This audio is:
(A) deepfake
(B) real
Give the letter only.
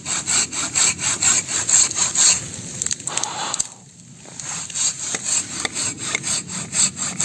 B